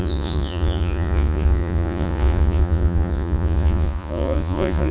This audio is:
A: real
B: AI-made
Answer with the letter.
B